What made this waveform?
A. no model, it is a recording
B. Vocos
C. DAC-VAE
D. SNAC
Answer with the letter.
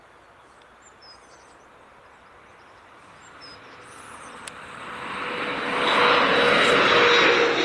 A